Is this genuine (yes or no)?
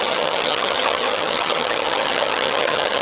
no